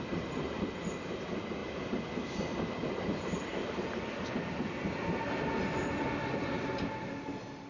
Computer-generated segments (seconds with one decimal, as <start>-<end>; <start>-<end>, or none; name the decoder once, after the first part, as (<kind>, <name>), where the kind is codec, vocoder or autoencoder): none